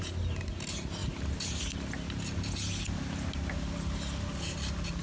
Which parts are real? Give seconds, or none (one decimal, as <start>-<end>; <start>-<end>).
0.0-5.0